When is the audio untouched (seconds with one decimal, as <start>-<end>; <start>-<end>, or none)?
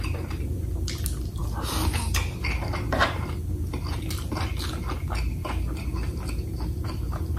0.0-7.4